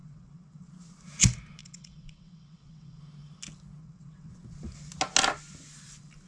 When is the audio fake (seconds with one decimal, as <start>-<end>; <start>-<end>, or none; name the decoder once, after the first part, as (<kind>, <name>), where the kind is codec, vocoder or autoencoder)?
0.0-0.7 (vocoder, WaveNeXt); 1.6-3.0; 3.8-4.3